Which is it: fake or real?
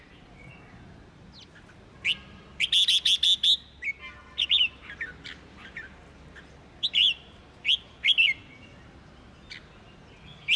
real